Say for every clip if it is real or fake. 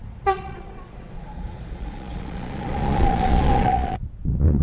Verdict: fake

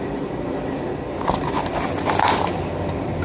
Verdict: real